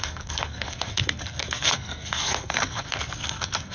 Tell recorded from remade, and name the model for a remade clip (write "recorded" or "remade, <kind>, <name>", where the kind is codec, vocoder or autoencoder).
remade, codec, SNAC